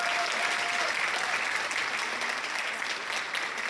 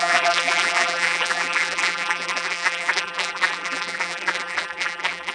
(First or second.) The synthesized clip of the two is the second